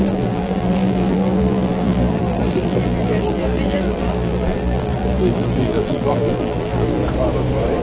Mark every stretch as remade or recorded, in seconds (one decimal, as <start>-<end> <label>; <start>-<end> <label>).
0.0-7.0 remade; 7.0-7.8 recorded